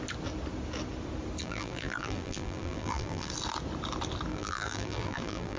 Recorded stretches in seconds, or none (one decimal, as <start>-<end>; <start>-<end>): 0.0-1.4; 3.3-4.3